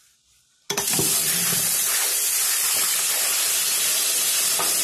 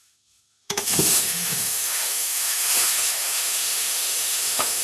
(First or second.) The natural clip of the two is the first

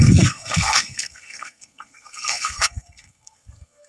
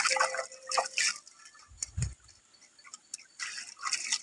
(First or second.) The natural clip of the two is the second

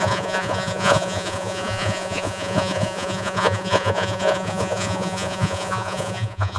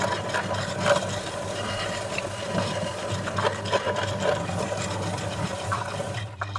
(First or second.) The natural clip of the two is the second